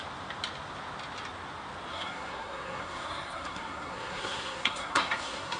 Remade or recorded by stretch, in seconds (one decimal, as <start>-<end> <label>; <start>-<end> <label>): 0.0-1.9 recorded; 1.9-5.6 remade

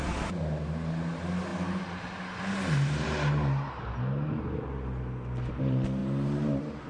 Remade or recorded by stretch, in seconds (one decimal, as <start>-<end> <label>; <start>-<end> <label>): 0.0-6.9 recorded

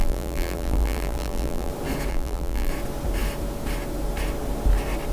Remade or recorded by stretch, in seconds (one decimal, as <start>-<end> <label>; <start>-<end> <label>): 0.0-1.7 remade; 1.7-2.1 recorded; 2.1-2.7 remade; 2.7-5.1 recorded

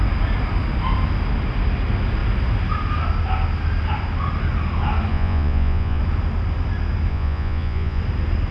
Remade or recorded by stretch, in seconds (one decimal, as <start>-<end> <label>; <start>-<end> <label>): 0.0-5.1 recorded; 5.1-6.0 remade; 6.0-7.1 recorded; 7.1-8.0 remade; 8.0-8.5 recorded

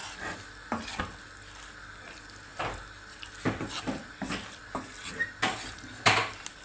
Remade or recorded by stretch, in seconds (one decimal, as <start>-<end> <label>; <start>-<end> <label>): 0.0-6.6 recorded

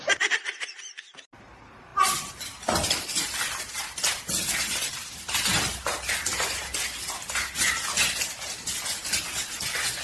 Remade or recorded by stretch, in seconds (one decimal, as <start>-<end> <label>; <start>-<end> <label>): 0.0-10.0 recorded

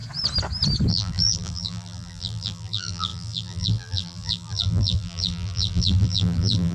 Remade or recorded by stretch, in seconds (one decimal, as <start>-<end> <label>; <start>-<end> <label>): 0.0-0.9 recorded; 0.9-6.7 remade